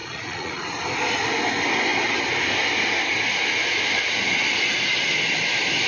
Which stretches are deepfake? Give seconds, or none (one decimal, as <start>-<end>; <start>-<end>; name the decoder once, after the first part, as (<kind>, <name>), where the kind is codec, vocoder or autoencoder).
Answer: 0.0-0.7 (vocoder, Vocos)